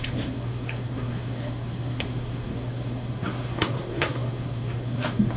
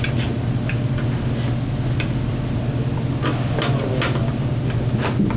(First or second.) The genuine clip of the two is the second